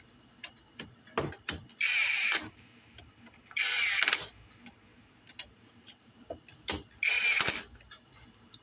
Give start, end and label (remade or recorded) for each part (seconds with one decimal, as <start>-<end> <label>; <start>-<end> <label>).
0.0-2.2 recorded; 2.2-3.0 remade; 3.0-4.9 recorded; 4.9-6.1 remade; 6.1-8.6 recorded